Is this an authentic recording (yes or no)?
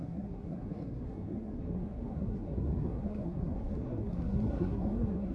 no